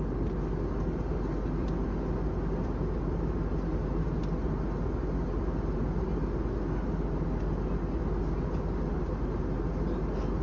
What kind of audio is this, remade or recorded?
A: recorded